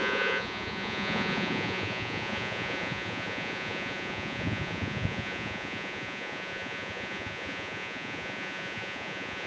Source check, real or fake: fake